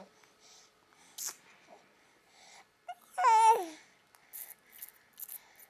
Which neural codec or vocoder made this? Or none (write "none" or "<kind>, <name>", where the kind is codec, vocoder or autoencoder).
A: none